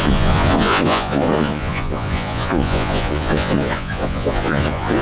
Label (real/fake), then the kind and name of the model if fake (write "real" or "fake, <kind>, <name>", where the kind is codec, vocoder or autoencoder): fake, vocoder, Vocos